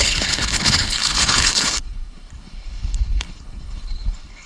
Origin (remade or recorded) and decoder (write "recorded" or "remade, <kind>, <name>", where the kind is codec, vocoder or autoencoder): remade, codec, HILCodec